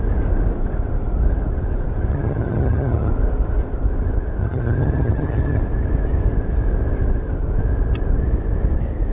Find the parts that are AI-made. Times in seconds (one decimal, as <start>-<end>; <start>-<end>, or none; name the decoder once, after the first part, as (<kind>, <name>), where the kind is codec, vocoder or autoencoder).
2.1-3.1 (vocoder, HiFi-GAN); 4.4-5.6